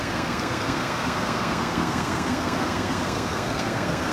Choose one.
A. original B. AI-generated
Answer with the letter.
B